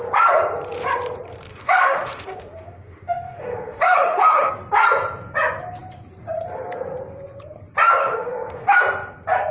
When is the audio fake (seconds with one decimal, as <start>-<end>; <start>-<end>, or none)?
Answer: 1.5-4.5; 8.0-8.8